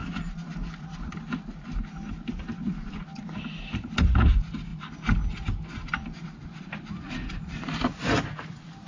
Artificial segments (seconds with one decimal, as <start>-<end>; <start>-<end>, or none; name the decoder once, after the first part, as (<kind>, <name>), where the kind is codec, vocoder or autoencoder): none